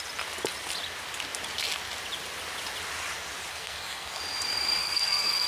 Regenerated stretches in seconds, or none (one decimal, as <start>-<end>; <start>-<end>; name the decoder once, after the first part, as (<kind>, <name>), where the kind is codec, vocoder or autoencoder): 3.5-4.2 (codec, SNAC); 4.8-5.5